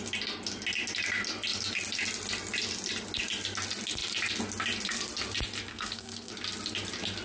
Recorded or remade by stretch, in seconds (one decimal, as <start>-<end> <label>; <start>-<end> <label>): 0.0-5.7 recorded; 5.7-6.3 remade; 6.3-7.2 recorded